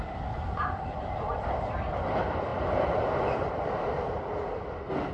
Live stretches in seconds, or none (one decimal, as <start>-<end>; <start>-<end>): none